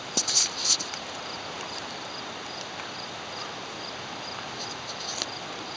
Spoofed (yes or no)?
no